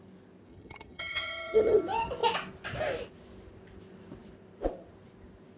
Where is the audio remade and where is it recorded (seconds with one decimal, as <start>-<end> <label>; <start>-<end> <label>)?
0.0-0.5 recorded; 0.5-1.8 remade; 1.8-5.6 recorded